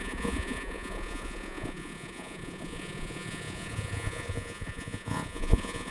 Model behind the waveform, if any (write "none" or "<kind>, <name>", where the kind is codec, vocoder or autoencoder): vocoder, Vocos